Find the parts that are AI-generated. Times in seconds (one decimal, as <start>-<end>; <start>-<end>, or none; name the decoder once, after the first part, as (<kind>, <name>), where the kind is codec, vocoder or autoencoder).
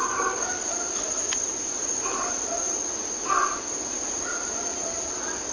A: none